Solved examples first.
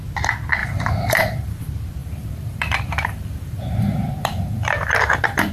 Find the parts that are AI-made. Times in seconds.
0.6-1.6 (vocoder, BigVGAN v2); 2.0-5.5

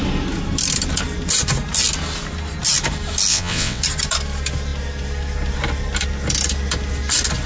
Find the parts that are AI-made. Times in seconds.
3.3-3.8 (vocoder, WaveNeXt)